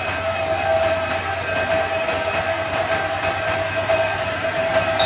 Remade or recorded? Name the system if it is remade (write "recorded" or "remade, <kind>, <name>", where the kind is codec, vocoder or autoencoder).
recorded